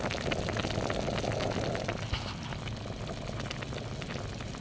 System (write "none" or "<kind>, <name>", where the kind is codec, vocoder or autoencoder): none